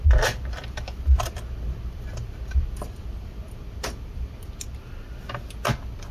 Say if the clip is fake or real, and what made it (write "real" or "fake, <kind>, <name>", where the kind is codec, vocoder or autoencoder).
real